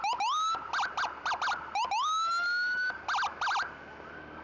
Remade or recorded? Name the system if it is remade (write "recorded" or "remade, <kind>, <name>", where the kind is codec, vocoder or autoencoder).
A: recorded